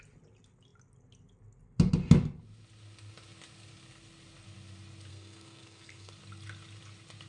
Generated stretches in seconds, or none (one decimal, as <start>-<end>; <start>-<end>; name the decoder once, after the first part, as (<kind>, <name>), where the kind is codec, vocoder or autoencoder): 5.1-6.1 (codec, SNAC)